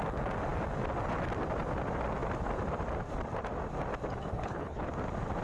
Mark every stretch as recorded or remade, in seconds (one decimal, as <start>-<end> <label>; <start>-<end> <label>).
0.0-4.3 recorded; 4.3-4.8 remade; 4.8-5.4 recorded